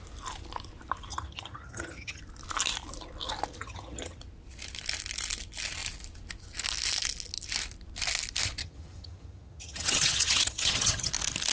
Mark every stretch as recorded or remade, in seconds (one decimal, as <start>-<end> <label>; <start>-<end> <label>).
0.0-1.1 recorded; 1.1-2.2 remade; 2.2-3.6 recorded; 3.6-4.2 remade; 4.2-8.6 recorded; 8.6-11.1 remade; 11.1-11.5 recorded